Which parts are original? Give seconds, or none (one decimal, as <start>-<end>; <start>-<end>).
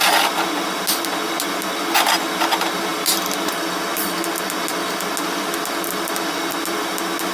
0.0-7.3